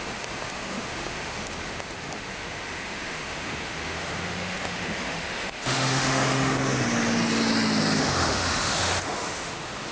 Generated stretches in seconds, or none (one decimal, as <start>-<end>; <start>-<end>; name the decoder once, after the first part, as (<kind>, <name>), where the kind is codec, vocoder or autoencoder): 0.0-6.5 (autoencoder, DAC-VAE); 8.0-9.9